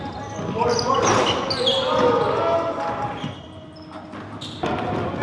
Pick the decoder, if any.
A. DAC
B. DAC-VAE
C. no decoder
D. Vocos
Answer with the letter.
C